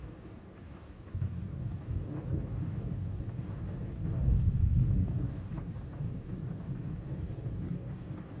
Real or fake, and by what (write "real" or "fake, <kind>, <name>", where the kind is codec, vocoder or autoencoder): fake, codec, DAC